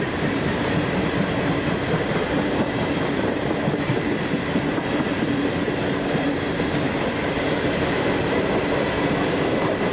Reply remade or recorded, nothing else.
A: remade